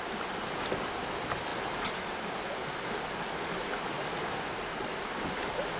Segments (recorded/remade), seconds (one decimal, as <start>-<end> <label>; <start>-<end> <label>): 0.0-5.8 recorded